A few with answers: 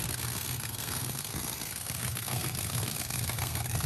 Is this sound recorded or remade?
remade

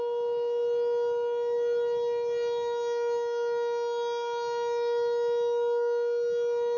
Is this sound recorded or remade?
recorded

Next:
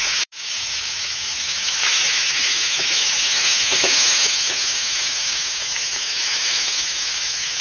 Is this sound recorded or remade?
remade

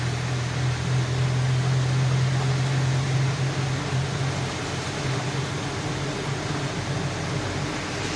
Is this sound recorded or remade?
recorded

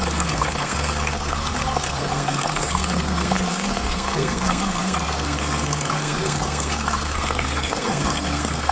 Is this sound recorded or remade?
remade